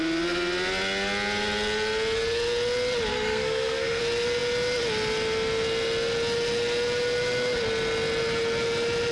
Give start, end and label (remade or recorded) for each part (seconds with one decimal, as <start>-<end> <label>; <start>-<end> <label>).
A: 0.0-3.1 recorded; 3.1-4.0 remade; 4.0-9.1 recorded